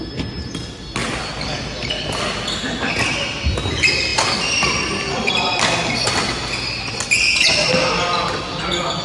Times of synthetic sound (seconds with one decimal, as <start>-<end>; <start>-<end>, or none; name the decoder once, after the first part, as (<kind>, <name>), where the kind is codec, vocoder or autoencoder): none